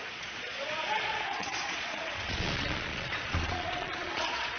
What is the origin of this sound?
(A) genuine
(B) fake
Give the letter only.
B